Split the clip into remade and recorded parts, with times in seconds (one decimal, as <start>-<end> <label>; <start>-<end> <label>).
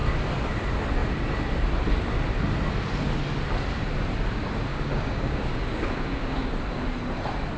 0.0-4.7 recorded; 4.7-6.6 remade; 6.6-7.6 recorded